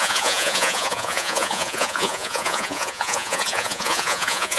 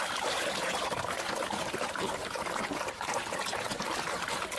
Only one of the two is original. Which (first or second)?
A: second